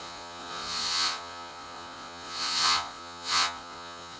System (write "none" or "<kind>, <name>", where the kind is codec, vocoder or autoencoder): vocoder, Vocos